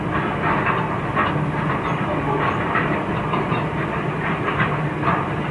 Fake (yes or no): no